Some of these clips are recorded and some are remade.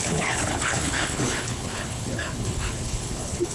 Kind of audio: remade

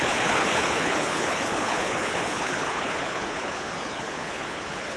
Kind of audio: remade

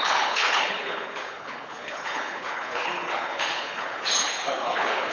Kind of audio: remade